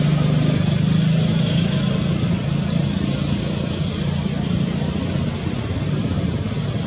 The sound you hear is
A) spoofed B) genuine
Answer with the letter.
B